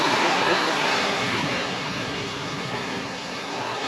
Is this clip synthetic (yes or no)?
yes